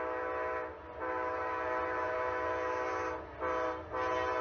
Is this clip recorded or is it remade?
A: recorded